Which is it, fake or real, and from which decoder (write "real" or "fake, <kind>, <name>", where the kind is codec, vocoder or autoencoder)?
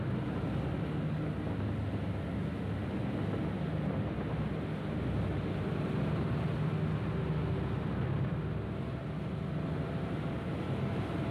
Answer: real